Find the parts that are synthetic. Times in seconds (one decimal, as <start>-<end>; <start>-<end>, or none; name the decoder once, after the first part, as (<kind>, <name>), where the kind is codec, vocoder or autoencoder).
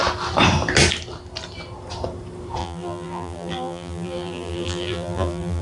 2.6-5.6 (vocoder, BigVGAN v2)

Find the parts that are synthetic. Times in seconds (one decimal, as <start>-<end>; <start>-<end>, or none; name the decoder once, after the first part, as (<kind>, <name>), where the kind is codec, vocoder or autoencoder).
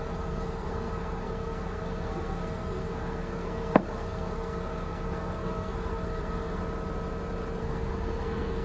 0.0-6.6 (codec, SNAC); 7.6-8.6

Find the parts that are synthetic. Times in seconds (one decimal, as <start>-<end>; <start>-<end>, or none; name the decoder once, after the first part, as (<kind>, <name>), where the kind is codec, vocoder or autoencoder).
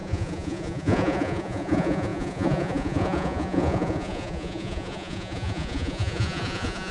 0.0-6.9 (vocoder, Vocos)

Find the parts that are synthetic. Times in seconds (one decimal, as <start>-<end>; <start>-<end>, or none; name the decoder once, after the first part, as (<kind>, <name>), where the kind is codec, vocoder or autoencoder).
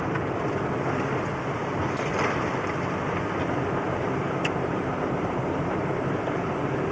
1.6-2.1 (vocoder, BigVGAN v2); 3.9-6.5